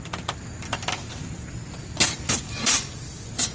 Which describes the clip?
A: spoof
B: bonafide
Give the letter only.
B